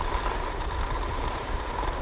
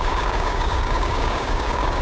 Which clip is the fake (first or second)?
second